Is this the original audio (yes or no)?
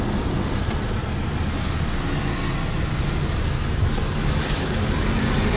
yes